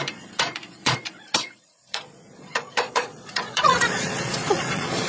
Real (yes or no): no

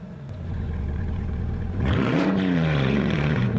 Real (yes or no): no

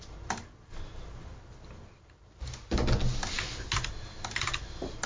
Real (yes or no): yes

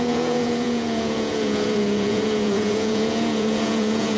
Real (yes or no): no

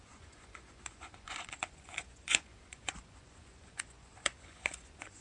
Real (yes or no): no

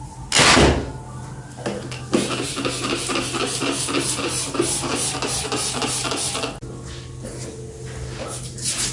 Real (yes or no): yes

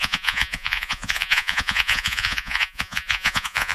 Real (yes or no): no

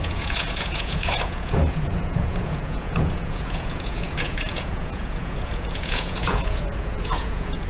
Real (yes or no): no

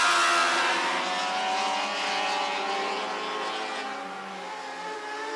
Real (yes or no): yes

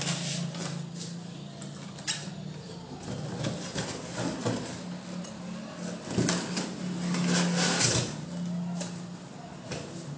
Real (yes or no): yes